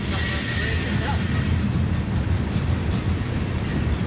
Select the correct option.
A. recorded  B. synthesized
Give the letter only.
A